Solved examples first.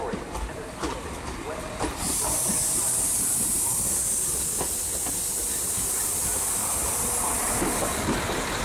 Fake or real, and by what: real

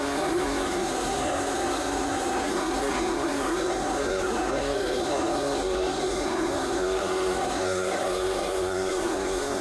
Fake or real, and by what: fake, codec, SNAC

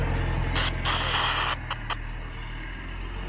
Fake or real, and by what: real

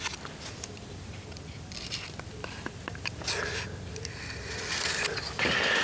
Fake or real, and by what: real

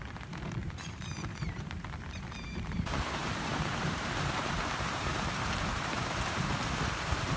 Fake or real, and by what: fake, vocoder, BigVGAN v2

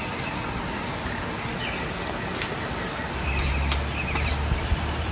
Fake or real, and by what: real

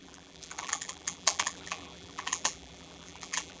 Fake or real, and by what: fake, vocoder, BigVGAN v2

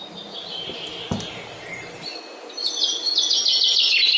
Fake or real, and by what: real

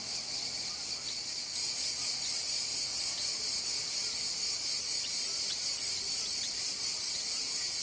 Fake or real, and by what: real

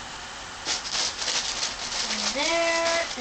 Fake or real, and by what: real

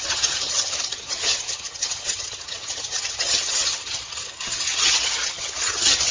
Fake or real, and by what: fake, vocoder, HiFi-GAN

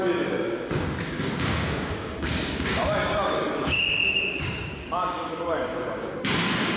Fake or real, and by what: fake, codec, DAC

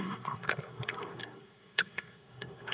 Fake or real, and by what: fake, codec, SNAC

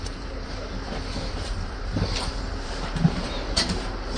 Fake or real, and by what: fake, vocoder, BigVGAN v2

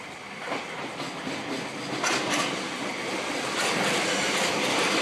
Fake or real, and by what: real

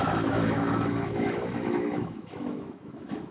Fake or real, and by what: fake, autoencoder, DAC-VAE